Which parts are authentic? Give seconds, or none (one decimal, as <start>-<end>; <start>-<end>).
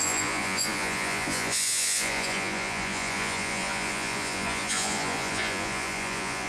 none